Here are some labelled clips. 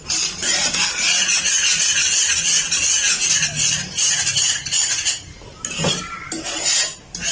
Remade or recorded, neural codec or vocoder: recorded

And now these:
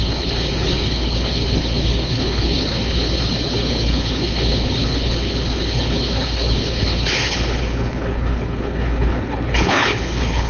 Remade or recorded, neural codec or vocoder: remade, codec, HILCodec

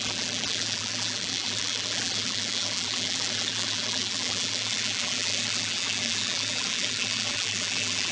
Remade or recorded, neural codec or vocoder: remade, vocoder, BigVGAN v2